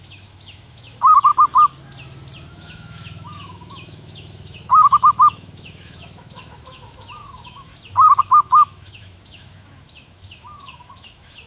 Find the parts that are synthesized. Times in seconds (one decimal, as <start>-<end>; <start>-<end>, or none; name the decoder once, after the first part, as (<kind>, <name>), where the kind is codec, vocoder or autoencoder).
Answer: 0.0-1.3 (autoencoder, DAC-VAE); 2.5-7.7; 8.2-11.5